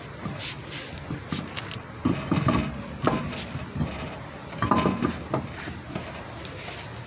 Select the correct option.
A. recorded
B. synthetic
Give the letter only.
A